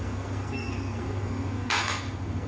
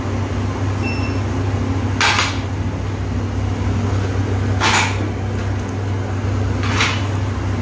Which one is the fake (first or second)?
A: first